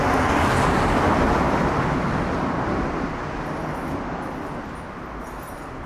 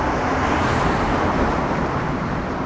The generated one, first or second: second